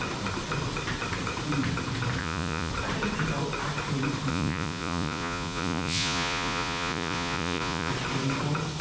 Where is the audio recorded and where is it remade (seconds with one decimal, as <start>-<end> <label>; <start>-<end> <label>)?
0.0-2.2 recorded; 2.2-2.7 remade; 2.7-4.3 recorded; 4.3-7.9 remade; 7.9-8.8 recorded